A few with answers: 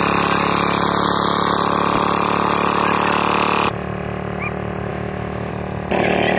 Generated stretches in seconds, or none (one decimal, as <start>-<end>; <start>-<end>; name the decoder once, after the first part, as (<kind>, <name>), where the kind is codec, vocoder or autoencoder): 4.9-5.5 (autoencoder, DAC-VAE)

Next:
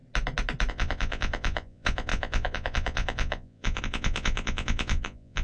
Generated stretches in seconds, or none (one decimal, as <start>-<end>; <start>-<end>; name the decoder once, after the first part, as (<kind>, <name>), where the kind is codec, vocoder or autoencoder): 0.7-5.4 (vocoder, Vocos)

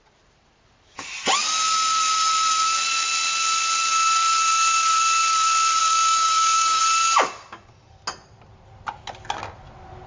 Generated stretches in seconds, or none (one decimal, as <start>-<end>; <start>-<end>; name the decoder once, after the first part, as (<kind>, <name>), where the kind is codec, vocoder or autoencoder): 5.8-6.8 (codec, DAC)

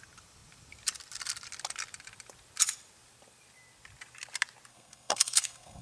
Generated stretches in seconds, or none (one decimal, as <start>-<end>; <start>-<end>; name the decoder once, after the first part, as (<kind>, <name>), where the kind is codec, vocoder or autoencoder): 4.7-5.8 (codec, SNAC)

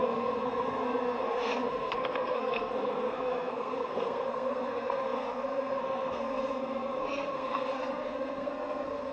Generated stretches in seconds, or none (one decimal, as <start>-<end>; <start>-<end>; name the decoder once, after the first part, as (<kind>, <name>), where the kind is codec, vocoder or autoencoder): 0.0-9.1 (codec, SNAC)

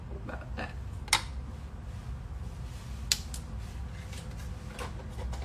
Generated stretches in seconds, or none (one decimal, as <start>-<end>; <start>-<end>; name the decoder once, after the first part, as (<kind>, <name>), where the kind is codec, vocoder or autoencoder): none

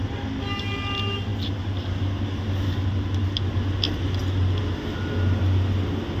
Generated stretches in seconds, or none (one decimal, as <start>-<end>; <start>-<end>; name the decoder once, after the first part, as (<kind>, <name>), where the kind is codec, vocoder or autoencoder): none

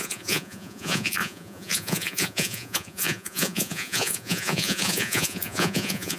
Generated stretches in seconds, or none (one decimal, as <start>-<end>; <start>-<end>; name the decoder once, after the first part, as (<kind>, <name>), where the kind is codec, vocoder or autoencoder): 0.0-6.2 (vocoder, Vocos)